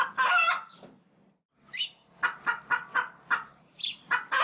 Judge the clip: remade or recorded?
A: recorded